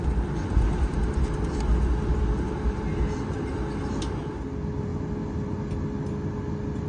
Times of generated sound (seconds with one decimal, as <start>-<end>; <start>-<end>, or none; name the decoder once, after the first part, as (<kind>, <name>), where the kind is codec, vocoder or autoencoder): none